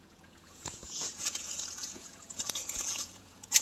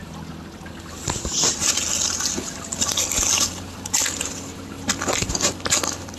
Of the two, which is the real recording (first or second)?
second